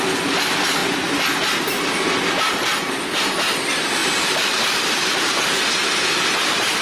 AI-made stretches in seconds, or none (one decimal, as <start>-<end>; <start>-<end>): 4.0-5.3